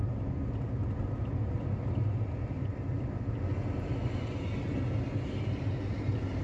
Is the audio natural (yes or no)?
yes